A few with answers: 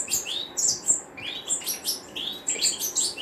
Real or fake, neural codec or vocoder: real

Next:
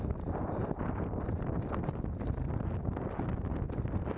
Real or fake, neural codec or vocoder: real